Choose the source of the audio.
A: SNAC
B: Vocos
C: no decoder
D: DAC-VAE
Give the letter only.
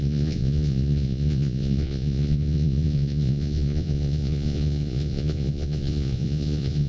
B